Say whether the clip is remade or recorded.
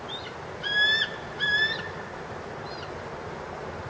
recorded